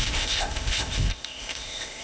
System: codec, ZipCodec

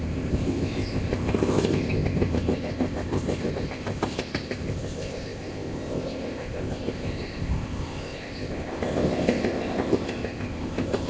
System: codec, ZipCodec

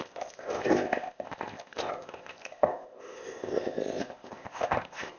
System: codec, ZipCodec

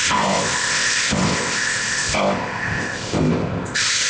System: codec, ZipCodec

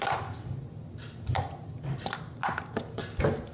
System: none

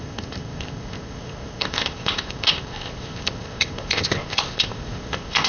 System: codec, ZipCodec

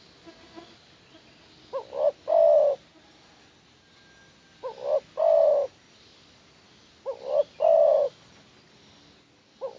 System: none